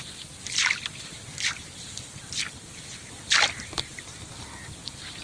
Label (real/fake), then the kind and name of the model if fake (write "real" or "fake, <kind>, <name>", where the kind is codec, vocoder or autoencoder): real